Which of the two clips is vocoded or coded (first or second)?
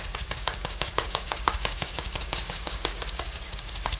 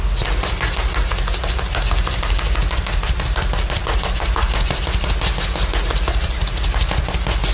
first